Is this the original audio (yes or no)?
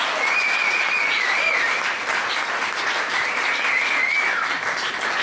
yes